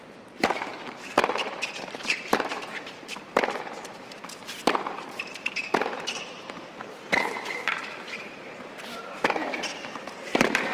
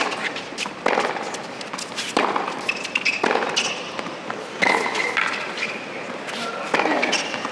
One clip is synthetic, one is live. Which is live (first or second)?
second